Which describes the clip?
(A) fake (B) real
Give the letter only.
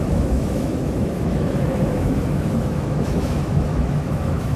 A